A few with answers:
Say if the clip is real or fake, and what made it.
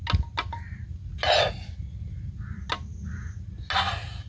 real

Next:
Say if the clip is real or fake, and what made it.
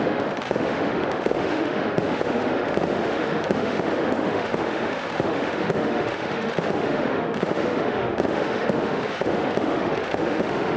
fake, autoencoder, DAC-VAE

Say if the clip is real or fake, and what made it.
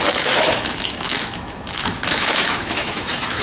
fake, autoencoder, DAC-VAE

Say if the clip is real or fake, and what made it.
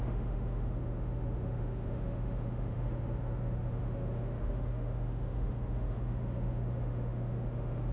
fake, autoencoder, DAC-VAE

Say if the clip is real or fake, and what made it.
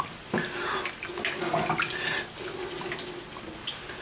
real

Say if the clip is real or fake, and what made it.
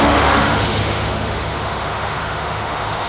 fake, autoencoder, DAC-VAE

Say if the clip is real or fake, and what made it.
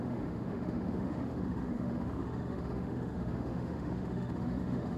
fake, autoencoder, DAC-VAE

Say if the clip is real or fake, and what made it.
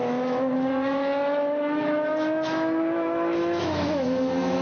fake, autoencoder, DAC-VAE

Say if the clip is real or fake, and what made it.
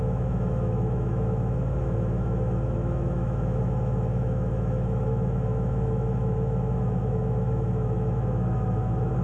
fake, autoencoder, DAC-VAE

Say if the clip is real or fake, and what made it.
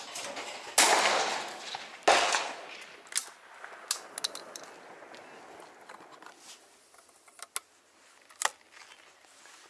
real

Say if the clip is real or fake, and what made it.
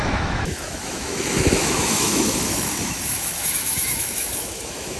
fake, autoencoder, DAC-VAE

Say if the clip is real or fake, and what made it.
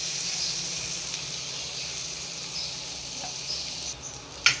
real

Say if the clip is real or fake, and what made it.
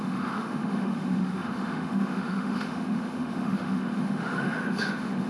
fake, autoencoder, DAC-VAE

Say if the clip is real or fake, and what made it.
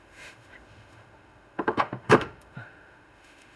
fake, autoencoder, DAC-VAE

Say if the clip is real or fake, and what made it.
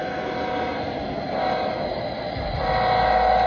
real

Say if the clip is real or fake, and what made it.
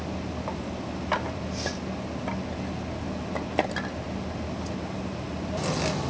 real